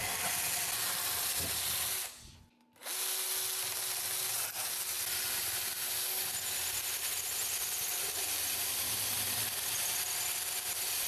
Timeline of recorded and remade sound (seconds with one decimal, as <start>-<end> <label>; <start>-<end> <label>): 0.0-11.1 recorded